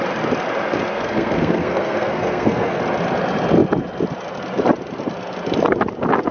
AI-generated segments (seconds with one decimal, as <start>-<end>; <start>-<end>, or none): 0.9-2.8